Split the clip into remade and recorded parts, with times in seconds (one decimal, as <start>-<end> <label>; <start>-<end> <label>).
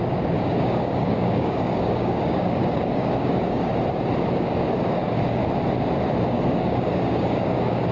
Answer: 0.0-3.7 remade; 3.7-4.3 recorded; 4.3-5.4 remade; 5.4-6.3 recorded; 6.3-7.9 remade